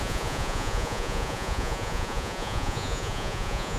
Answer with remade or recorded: remade